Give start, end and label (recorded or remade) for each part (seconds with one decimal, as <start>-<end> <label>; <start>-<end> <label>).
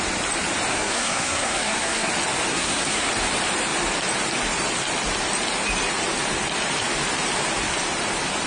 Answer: 0.0-0.7 recorded; 0.7-2.1 remade; 2.1-2.5 recorded; 2.5-3.1 remade; 3.1-8.5 recorded